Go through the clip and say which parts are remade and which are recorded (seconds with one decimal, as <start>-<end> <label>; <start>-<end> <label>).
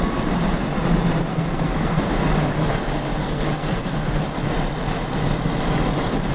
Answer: 0.0-1.3 recorded; 1.3-2.1 remade; 2.1-3.2 recorded; 3.2-3.9 remade; 3.9-6.3 recorded